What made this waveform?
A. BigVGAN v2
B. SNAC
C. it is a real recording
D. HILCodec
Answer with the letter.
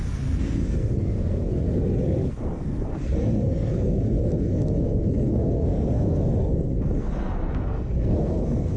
B